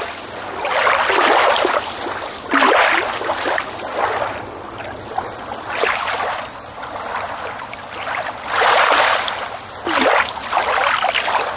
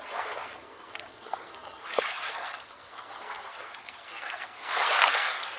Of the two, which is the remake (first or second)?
second